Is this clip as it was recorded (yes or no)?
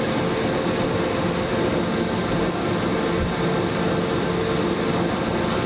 yes